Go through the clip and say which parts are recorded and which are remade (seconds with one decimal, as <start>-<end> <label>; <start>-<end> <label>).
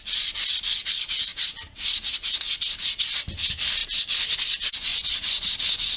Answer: 0.0-4.9 recorded; 4.9-5.5 remade; 5.5-6.0 recorded